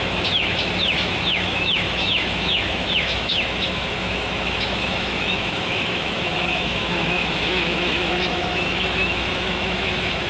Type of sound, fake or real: fake